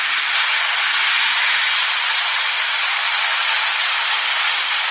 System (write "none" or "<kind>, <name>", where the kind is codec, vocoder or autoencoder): none